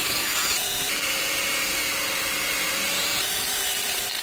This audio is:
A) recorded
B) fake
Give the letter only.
B